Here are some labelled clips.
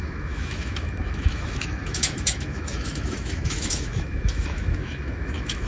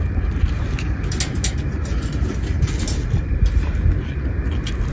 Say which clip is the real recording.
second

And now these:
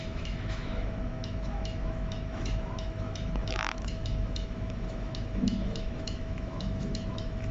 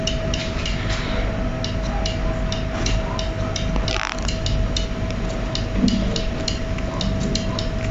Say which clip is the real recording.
second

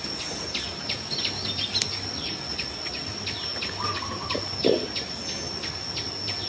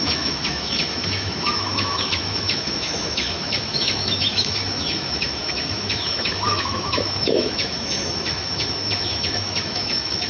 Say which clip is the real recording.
first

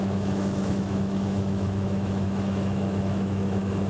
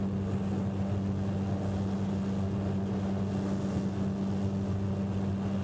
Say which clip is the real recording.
second